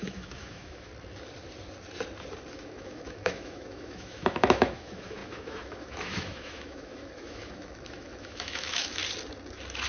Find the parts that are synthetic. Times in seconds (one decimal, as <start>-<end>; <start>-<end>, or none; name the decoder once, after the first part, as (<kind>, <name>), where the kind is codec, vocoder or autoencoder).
0.0-0.9 (autoencoder, DAC-VAE); 2.5-9.0